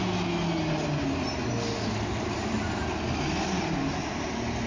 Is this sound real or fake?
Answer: real